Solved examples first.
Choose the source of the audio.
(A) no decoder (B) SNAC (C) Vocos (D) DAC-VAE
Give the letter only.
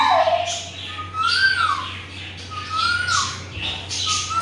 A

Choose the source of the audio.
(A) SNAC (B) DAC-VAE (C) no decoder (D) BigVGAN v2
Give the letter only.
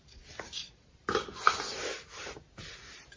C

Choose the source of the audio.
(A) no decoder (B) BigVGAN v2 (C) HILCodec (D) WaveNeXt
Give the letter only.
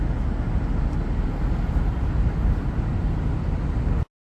A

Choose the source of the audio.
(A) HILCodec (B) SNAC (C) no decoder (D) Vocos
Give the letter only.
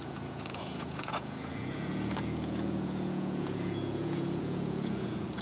D